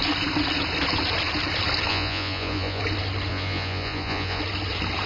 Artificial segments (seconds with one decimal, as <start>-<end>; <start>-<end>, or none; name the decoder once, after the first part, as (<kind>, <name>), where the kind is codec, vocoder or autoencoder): 1.9-2.8 (vocoder, Vocos); 3.3-4.4